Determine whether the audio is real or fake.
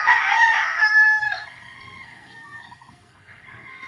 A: fake